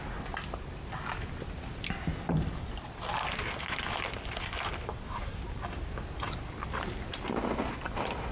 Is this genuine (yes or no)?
yes